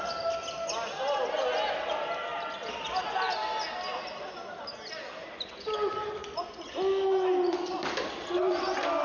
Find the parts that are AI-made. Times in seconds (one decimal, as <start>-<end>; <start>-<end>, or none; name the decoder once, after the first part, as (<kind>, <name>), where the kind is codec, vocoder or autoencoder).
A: 6.2-6.7 (vocoder, Vocos)